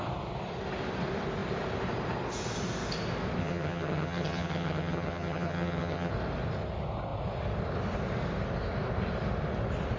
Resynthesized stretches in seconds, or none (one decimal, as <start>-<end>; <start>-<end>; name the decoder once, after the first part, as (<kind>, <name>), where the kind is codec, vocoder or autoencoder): 3.4-6.1 (vocoder, HiFi-GAN)